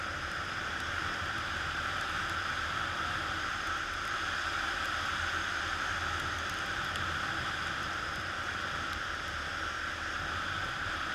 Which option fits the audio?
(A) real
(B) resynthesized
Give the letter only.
A